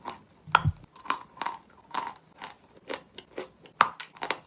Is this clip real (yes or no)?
yes